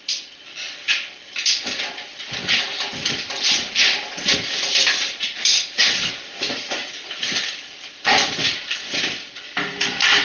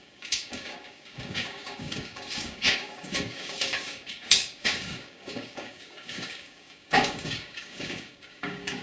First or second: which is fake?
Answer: second